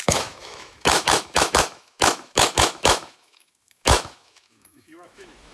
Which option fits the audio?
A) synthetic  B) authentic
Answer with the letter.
A